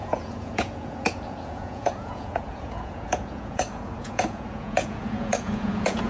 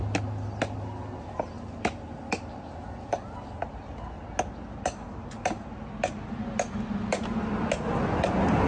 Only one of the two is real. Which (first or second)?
second